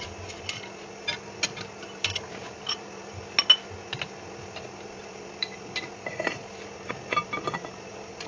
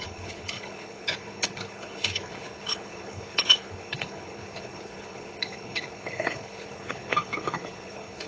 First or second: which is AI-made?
second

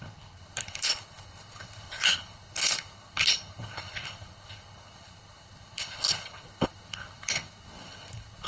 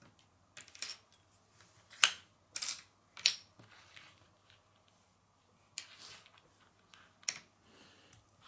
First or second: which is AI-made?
first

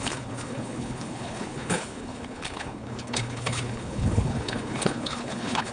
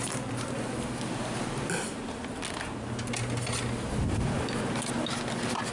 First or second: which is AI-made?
first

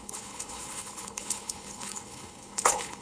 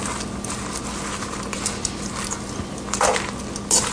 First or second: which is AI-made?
first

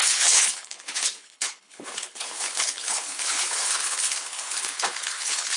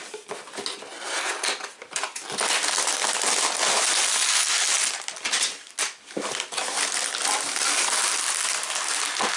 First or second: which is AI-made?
first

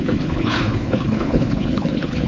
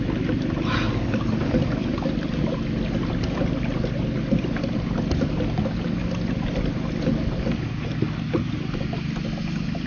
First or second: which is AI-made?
first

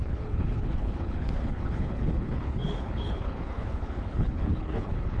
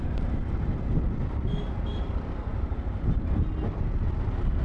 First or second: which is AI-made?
first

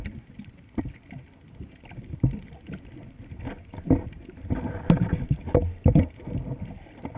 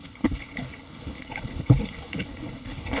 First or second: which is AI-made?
second